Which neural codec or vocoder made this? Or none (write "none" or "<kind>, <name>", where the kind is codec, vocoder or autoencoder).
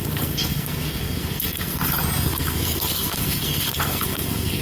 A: codec, SNAC